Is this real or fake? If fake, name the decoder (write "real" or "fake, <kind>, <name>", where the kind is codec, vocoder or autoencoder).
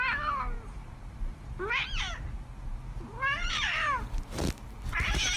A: real